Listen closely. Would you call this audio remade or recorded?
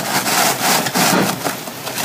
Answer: recorded